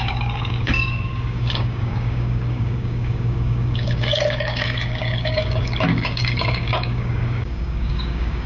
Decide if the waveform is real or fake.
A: fake